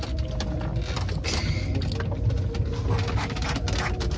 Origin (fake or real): real